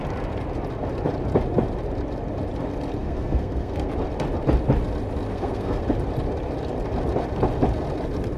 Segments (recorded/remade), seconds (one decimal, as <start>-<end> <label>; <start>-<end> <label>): 0.0-3.0 recorded; 3.0-3.9 remade; 3.9-5.3 recorded; 5.3-5.8 remade; 5.8-8.4 recorded